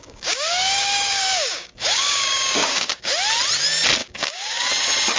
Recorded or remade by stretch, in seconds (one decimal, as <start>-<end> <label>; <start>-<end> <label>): 0.0-3.1 remade; 3.1-4.0 recorded; 4.0-4.7 remade; 4.7-5.2 recorded